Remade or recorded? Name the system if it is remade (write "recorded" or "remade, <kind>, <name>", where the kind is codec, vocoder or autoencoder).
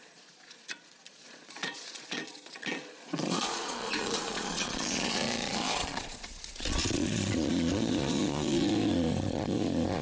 remade, vocoder, Vocos